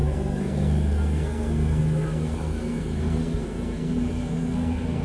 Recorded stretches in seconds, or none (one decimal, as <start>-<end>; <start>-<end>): none